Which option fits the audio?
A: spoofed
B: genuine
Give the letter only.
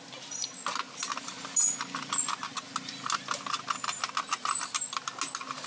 B